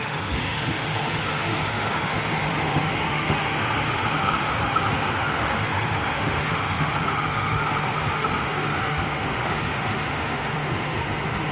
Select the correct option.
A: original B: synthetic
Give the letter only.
B